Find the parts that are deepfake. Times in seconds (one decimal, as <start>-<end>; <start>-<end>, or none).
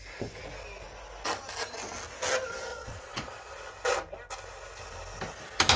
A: 2.7-3.5